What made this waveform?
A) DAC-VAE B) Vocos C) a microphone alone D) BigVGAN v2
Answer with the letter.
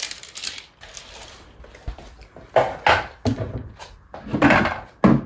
C